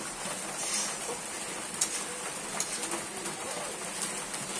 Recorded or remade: recorded